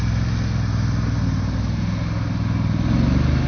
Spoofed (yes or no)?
no